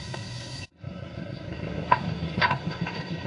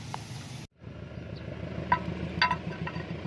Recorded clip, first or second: second